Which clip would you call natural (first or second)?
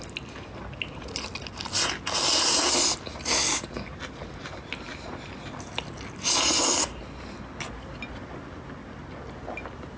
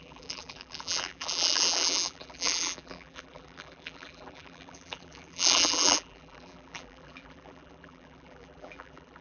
first